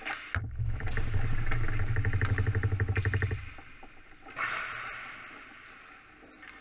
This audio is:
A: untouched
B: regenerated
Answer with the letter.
A